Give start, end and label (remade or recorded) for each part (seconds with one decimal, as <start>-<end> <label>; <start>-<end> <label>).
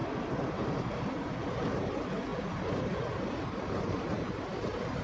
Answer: 0.0-5.0 recorded